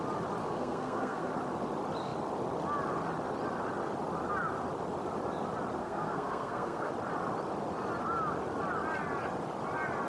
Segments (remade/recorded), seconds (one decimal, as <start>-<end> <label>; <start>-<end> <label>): 0.0-0.4 recorded; 0.4-1.3 remade; 1.3-5.8 recorded; 5.8-6.9 remade; 6.9-10.1 recorded